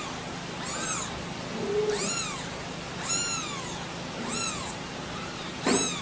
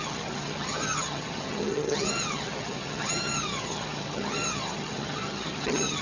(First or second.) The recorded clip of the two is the first